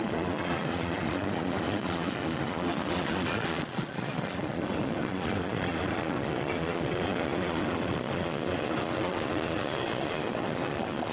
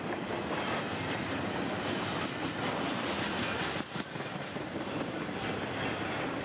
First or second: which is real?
second